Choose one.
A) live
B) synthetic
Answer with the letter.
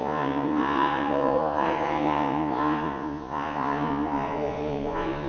B